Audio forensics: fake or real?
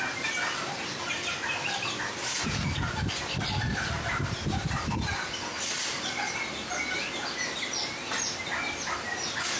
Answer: real